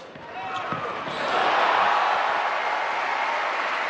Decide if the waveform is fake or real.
real